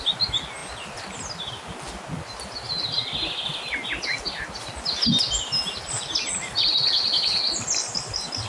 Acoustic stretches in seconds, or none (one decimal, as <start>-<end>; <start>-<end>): 0.0-8.5